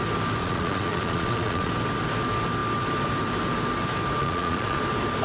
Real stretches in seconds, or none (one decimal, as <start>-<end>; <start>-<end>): 0.0-0.4; 1.7-4.2; 4.8-5.2